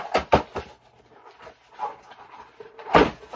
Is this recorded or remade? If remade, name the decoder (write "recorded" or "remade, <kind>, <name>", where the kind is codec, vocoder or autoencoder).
recorded